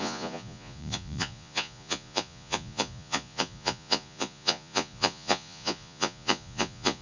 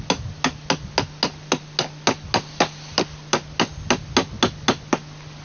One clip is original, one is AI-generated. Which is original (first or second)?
second